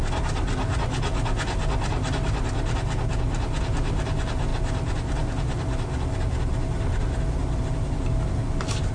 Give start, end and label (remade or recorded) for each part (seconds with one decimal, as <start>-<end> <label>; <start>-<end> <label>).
0.0-8.9 recorded